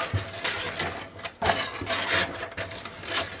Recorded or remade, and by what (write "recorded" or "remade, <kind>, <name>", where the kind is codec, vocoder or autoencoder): recorded